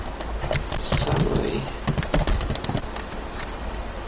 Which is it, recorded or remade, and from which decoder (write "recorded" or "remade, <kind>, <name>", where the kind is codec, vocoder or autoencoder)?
recorded